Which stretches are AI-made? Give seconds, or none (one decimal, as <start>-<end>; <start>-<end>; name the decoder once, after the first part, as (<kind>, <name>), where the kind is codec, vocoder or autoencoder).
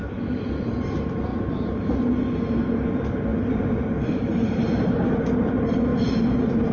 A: 1.3-2.0 (vocoder, BigVGAN v2); 3.3-5.3